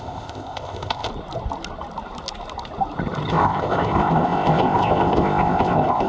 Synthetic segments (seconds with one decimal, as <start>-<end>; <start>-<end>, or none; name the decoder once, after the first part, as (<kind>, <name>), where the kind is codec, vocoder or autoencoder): 0.0-1.1 (codec, ZipCodec); 3.3-6.1

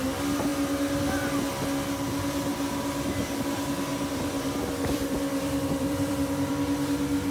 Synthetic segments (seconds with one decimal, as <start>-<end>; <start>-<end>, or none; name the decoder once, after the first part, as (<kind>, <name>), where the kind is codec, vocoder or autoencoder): 3.9-6.5 (vocoder, BigVGAN v2)

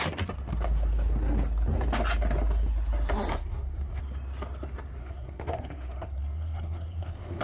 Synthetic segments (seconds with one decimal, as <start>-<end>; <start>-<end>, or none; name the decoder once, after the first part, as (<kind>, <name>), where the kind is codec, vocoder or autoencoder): 3.3-4.0 (codec, SNAC); 5.0-7.4

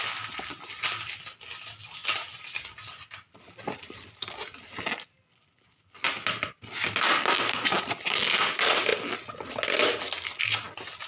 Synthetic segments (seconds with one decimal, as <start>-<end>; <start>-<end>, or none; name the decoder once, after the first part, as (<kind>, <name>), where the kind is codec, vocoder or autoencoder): none